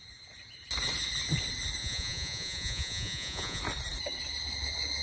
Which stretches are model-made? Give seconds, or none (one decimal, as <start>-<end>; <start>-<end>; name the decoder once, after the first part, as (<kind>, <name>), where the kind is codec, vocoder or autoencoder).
1.8-3.6 (vocoder, Vocos)